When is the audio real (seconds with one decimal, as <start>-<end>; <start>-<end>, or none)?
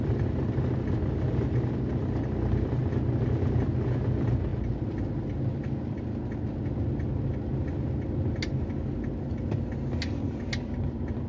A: 0.0-11.3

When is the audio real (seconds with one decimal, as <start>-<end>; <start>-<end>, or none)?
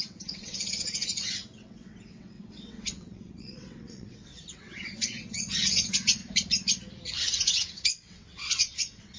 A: 6.2-7.2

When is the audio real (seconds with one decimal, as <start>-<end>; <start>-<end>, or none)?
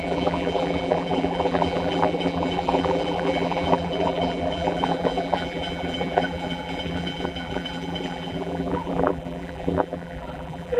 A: none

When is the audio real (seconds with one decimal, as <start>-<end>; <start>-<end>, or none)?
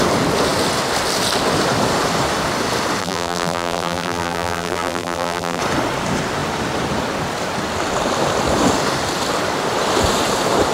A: 0.0-3.0; 5.6-10.7